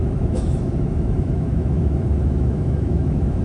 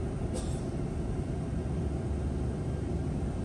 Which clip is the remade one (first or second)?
first